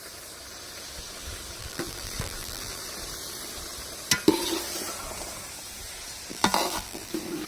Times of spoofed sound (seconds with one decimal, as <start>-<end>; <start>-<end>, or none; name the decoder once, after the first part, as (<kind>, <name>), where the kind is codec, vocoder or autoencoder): 1.6-2.8 (vocoder, BigVGAN v2); 6.3-7.1